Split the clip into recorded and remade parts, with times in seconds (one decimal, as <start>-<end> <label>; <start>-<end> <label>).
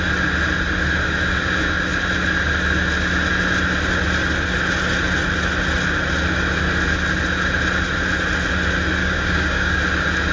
0.0-9.0 recorded; 9.0-9.8 remade; 9.8-10.3 recorded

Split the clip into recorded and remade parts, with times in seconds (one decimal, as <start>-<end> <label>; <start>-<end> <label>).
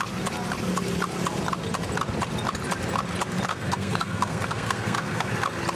0.0-3.5 recorded; 3.5-5.3 remade; 5.3-5.8 recorded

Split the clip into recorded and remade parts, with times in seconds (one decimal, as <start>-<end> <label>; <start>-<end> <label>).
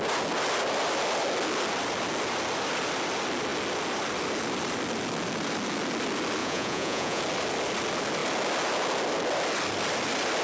0.0-6.4 recorded; 6.4-7.2 remade; 7.2-10.4 recorded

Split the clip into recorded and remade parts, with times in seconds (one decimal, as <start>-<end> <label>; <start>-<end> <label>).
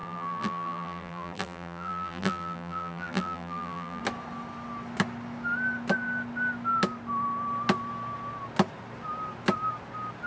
0.0-4.0 remade; 4.0-10.3 recorded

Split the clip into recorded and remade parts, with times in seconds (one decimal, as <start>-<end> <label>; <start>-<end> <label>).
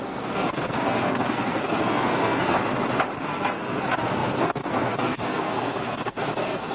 0.0-2.6 remade; 2.6-3.2 recorded; 3.2-6.7 remade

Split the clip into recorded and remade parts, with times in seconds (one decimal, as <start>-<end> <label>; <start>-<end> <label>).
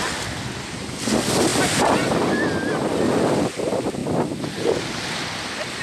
0.0-5.8 recorded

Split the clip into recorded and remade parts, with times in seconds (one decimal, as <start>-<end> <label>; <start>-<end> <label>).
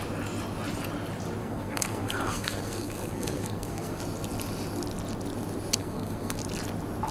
0.0-1.4 recorded; 1.4-4.0 remade; 4.0-5.8 recorded; 5.8-6.4 remade; 6.4-7.1 recorded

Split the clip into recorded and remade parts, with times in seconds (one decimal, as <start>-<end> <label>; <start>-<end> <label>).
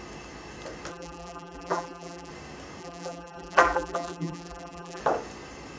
0.0-0.9 recorded; 0.9-2.3 remade; 2.3-2.8 recorded; 2.8-5.0 remade; 5.0-5.8 recorded